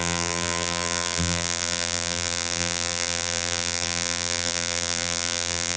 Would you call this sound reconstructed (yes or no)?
yes